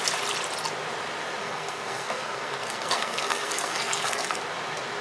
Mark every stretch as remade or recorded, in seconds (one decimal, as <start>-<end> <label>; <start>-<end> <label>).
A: 0.0-1.4 recorded; 1.4-4.4 remade; 4.4-5.0 recorded